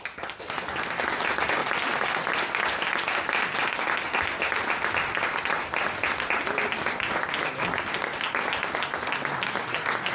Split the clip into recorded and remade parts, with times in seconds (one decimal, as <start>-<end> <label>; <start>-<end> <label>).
0.0-10.1 recorded